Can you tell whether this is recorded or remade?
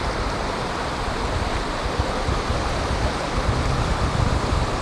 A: recorded